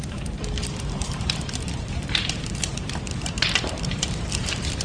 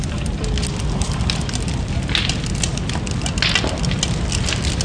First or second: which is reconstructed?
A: first